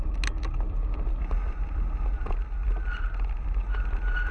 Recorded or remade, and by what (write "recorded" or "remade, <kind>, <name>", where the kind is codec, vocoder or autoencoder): recorded